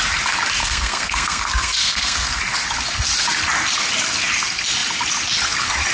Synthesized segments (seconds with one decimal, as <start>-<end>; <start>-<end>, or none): 0.6-2.4